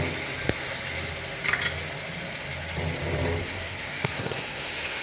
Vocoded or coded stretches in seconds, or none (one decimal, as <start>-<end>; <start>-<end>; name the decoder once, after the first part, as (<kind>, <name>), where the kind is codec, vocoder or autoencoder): 3.4-5.0 (codec, SNAC)